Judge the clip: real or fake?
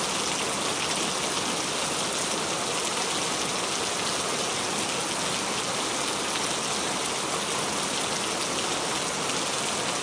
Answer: real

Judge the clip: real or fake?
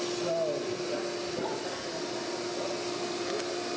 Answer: real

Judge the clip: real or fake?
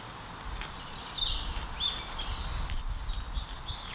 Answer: real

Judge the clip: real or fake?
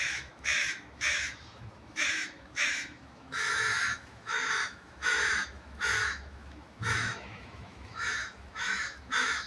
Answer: fake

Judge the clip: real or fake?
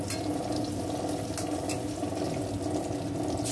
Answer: real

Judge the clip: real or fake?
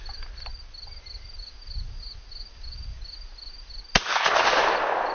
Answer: real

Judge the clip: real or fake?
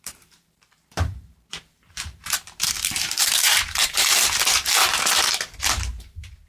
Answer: fake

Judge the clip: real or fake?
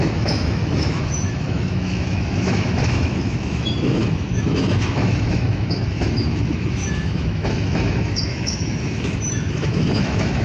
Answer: fake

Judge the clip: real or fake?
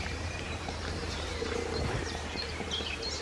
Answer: fake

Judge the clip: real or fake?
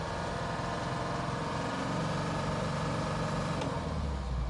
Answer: real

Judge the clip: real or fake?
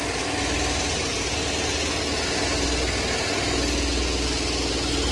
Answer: real